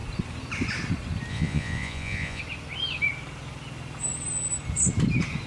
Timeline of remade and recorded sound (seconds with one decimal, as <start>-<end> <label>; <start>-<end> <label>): 0.0-1.3 recorded; 1.3-2.4 remade; 2.4-5.5 recorded